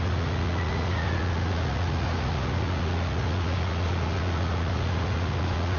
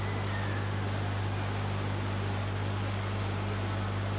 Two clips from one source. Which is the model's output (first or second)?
first